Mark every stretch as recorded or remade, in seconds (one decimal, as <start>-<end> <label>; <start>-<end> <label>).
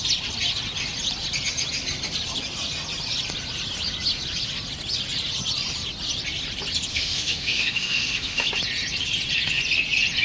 0.0-6.9 recorded; 6.9-8.5 remade; 8.5-10.2 recorded